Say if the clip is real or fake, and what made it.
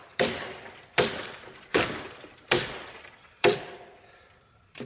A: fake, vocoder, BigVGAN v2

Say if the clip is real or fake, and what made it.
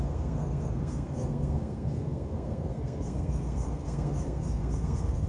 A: fake, codec, SNAC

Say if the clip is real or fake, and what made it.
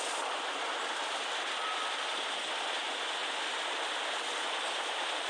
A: fake, vocoder, BigVGAN v2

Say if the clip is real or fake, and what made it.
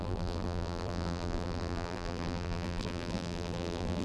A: fake, vocoder, BigVGAN v2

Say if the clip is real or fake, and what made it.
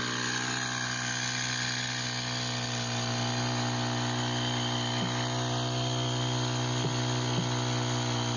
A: real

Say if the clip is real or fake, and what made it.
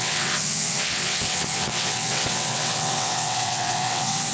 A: fake, vocoder, WaveNeXt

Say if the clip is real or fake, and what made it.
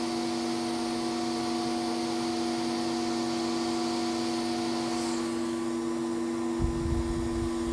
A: real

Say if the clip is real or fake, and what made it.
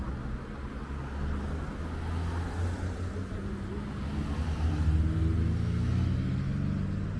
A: real